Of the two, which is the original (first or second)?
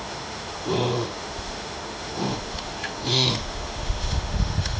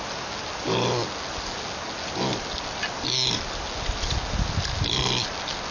second